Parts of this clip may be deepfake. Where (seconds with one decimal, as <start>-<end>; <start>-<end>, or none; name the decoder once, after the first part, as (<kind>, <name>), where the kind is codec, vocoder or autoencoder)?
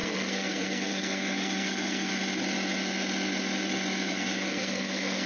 0.0-2.1 (codec, SNAC); 4.1-5.3